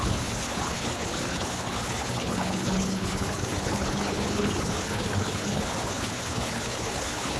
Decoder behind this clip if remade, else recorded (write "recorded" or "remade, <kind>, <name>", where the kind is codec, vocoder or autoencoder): remade, codec, HILCodec